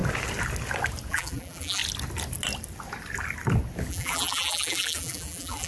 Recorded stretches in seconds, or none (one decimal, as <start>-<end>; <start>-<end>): 0.0-1.1; 1.8-3.9